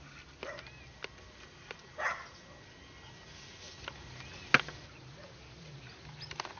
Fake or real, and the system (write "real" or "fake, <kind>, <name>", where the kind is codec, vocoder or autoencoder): real